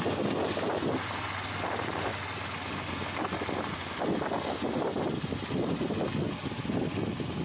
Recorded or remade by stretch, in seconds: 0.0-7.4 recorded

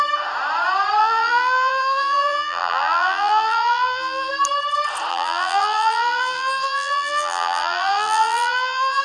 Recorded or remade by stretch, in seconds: 0.0-1.0 recorded; 1.0-4.3 remade; 4.3-5.1 recorded; 5.1-9.0 remade

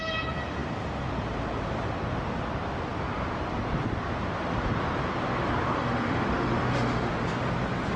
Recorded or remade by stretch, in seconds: 0.0-5.8 recorded; 5.8-7.1 remade; 7.1-8.0 recorded

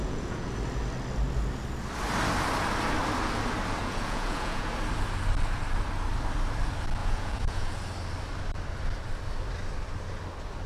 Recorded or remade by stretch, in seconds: 0.0-0.5 remade; 0.5-3.8 recorded; 3.8-4.7 remade; 4.7-7.0 recorded; 7.0-7.7 remade; 7.7-10.7 recorded